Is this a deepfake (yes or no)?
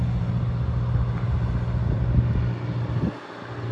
no